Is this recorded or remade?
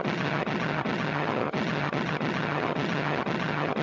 remade